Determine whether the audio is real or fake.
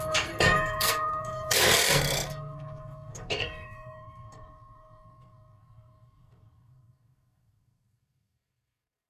fake